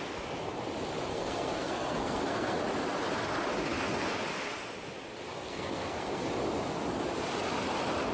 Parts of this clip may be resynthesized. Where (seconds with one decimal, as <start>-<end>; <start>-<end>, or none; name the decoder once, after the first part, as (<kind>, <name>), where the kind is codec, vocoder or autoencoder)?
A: 1.1-2.6 (codec, SNAC); 5.3-6.3